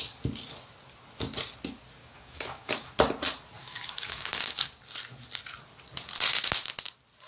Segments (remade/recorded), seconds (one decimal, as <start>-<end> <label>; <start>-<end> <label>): 0.0-2.0 recorded; 2.0-2.9 remade; 2.9-3.6 recorded; 3.6-4.3 remade; 4.3-7.3 recorded